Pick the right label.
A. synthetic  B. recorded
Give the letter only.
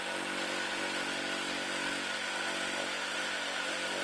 B